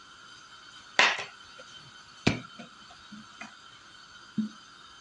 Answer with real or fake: real